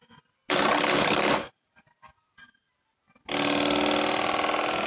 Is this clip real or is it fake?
real